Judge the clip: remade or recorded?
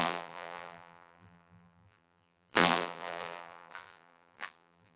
remade